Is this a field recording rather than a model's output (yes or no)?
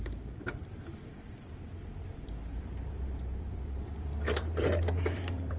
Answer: no